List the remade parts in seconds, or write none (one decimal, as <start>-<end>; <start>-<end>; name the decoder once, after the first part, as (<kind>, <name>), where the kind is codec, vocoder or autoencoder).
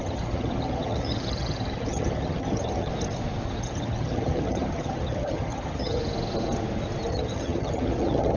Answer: 0.0-2.9 (vocoder, HiFi-GAN); 3.6-6.0; 7.1-8.4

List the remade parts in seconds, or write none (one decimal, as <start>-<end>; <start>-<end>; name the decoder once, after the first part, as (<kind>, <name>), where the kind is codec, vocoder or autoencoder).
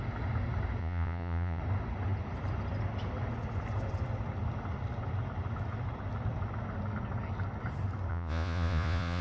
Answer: 0.8-1.6 (vocoder, Vocos); 8.1-9.2